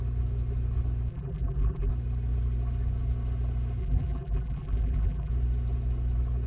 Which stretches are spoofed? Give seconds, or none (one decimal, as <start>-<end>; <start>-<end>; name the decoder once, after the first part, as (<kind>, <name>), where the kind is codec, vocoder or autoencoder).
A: 1.1-1.9 (vocoder, BigVGAN v2); 3.8-5.3